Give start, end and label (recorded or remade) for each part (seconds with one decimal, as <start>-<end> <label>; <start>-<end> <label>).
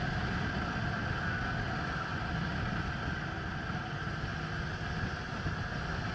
0.0-6.1 recorded